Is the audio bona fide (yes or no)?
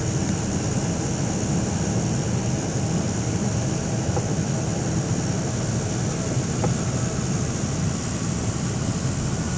yes